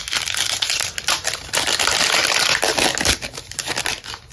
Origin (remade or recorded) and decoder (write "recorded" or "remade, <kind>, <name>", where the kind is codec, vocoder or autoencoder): recorded